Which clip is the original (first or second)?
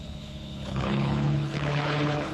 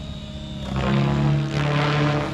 second